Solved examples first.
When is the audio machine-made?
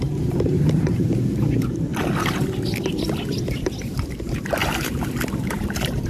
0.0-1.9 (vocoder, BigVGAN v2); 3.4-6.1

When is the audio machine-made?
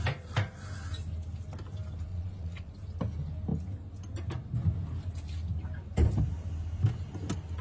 2.1-2.7 (vocoder, Vocos)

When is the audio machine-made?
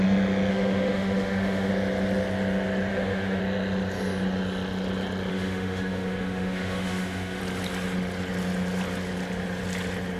0.5-1.7 (autoencoder, DAC-VAE); 2.9-3.4; 5.3-7.4